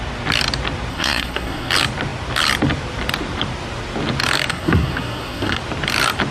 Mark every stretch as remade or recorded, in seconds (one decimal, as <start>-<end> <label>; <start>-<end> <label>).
0.0-0.9 recorded; 0.9-1.7 remade; 1.7-4.5 recorded; 4.5-5.6 remade; 5.6-6.3 recorded